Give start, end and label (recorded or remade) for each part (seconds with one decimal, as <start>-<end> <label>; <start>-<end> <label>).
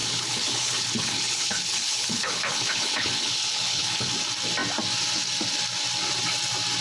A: 0.0-4.1 remade; 4.1-6.8 recorded